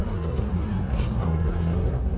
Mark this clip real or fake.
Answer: fake